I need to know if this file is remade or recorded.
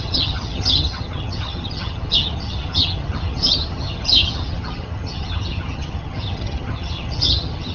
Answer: remade